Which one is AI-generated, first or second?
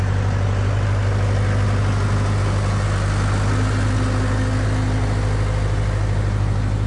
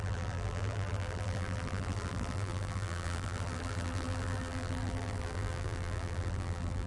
second